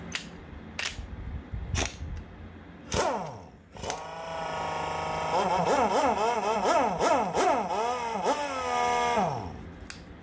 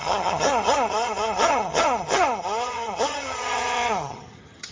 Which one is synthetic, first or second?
second